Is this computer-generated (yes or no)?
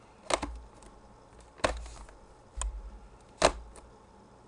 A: no